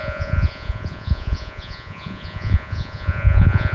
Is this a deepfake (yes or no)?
yes